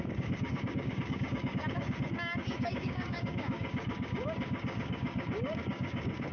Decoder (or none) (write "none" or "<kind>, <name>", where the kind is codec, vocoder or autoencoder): codec, DAC